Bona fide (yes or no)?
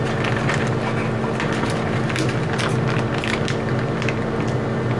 yes